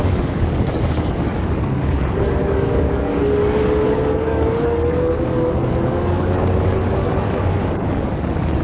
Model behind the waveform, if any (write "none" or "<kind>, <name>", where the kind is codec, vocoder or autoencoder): codec, DAC